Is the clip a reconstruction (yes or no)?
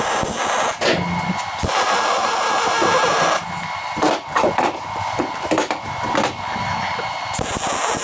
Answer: no